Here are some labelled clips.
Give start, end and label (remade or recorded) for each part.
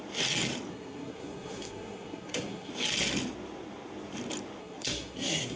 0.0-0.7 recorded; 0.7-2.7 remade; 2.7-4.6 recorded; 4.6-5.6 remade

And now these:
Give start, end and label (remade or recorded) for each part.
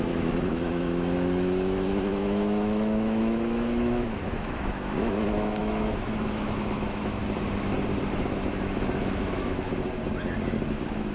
0.0-7.2 remade; 7.2-8.3 recorded; 8.3-9.7 remade; 9.7-10.7 recorded; 10.7-11.1 remade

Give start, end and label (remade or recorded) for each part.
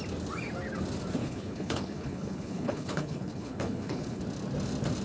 0.0-1.2 recorded; 1.2-4.2 remade; 4.2-5.0 recorded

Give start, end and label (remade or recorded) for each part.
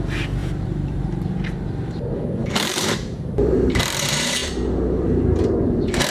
0.0-0.4 recorded; 0.4-1.3 remade; 1.3-2.4 recorded; 2.4-3.8 remade; 3.8-6.1 recorded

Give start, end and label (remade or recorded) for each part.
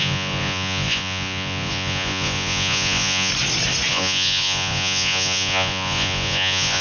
0.0-3.3 remade; 3.3-3.9 recorded; 3.9-6.8 remade